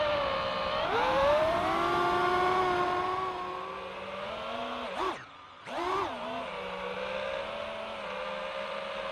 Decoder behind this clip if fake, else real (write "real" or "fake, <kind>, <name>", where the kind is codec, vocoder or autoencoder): real